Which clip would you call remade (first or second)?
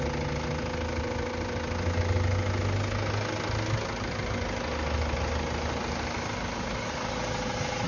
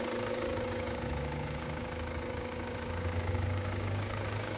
second